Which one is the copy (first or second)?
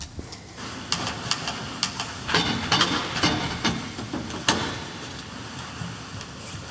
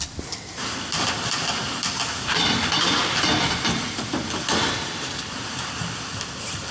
second